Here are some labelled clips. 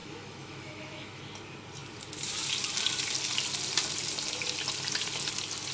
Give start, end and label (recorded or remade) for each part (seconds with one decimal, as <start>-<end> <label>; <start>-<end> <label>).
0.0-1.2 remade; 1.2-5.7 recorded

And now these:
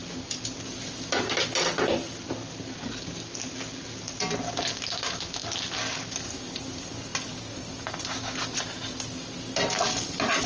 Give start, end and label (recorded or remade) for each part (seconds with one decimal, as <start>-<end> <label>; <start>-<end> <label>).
0.0-10.5 recorded

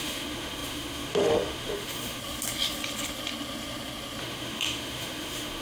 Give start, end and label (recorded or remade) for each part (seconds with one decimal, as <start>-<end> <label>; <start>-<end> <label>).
0.0-2.2 remade; 2.2-4.2 recorded; 4.2-5.6 remade

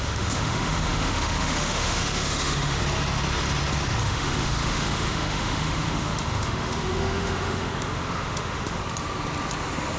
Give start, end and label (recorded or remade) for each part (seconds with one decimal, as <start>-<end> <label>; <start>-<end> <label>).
0.0-2.8 remade; 2.8-4.0 recorded; 4.0-8.8 remade; 8.8-10.0 recorded

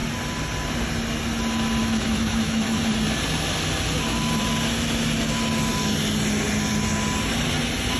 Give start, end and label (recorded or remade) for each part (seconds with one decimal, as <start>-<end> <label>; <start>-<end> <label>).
0.0-1.8 recorded; 1.8-2.8 remade; 2.8-8.0 recorded

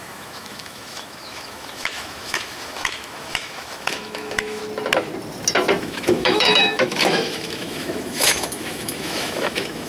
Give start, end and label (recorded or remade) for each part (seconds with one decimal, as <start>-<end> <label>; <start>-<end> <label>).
0.0-4.6 remade; 4.6-5.8 recorded; 5.8-9.9 remade

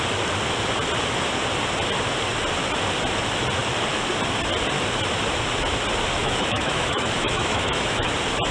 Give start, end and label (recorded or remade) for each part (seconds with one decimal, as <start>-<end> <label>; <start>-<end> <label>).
0.0-6.2 recorded; 6.2-8.1 remade; 8.1-8.5 recorded